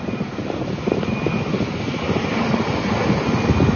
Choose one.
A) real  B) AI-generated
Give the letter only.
A